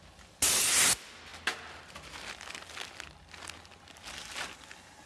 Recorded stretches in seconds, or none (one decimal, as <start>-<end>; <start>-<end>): 0.0-5.1